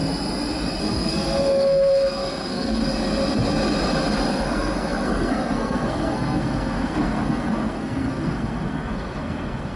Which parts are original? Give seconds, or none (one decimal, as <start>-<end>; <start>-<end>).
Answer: 0.0-0.8; 2.8-4.3